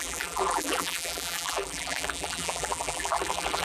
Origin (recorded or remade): remade